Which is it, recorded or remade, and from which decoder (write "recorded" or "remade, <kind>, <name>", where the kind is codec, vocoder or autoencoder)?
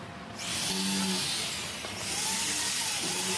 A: recorded